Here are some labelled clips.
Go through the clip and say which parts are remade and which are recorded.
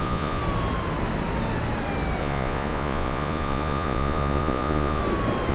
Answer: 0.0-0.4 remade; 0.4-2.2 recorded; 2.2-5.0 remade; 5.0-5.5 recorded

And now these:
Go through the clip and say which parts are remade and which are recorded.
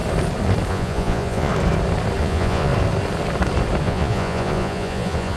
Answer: 0.0-0.7 recorded; 0.7-1.5 remade; 1.5-2.2 recorded; 2.2-2.7 remade; 2.7-3.8 recorded; 3.8-5.4 remade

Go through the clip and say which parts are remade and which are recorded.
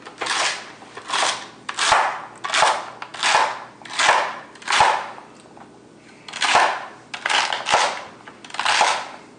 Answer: 0.0-9.4 recorded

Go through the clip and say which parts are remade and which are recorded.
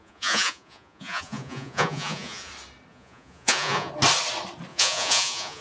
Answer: 0.0-2.5 remade; 2.5-2.9 recorded; 2.9-3.9 remade; 3.9-4.7 recorded; 4.7-5.6 remade